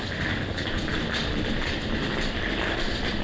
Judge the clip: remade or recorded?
recorded